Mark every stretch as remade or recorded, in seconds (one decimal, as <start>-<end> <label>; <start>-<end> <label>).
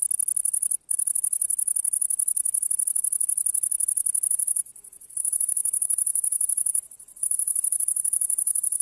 0.0-4.3 recorded; 4.3-8.8 remade